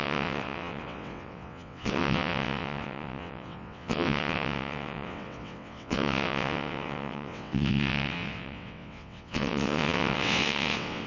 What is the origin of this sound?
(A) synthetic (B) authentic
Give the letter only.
A